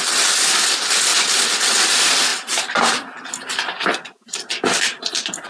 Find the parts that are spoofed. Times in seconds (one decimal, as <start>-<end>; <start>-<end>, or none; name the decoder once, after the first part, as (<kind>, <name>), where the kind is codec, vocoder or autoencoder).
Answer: 1.1-1.7 (vocoder, BigVGAN v2); 2.3-5.5